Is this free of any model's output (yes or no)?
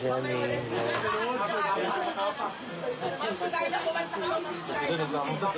yes